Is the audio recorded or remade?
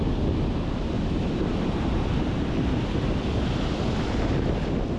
recorded